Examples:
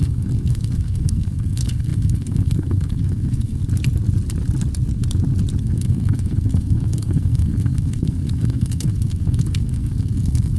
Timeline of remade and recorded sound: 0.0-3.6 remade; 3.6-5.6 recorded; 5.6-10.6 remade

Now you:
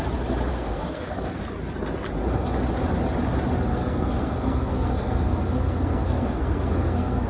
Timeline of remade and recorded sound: 0.0-0.5 recorded; 0.5-1.4 remade; 1.4-3.7 recorded; 3.7-7.3 remade

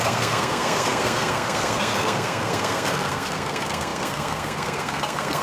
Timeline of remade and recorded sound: 0.0-5.4 remade

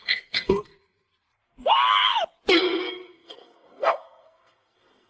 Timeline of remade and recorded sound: 0.0-0.7 remade; 0.7-2.5 recorded; 2.5-5.1 remade

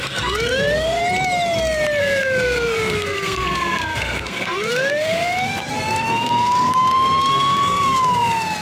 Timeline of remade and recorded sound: 0.0-1.0 remade; 1.0-2.0 recorded; 2.0-8.6 remade

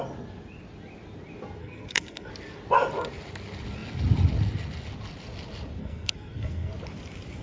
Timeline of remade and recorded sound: 0.0-1.6 recorded; 1.6-2.3 remade; 2.3-5.8 recorded; 5.8-6.7 remade; 6.7-7.4 recorded

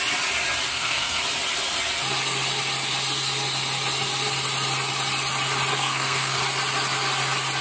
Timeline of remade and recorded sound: 0.0-0.7 recorded; 0.7-1.2 remade; 1.2-5.7 recorded; 5.7-6.4 remade; 6.4-7.6 recorded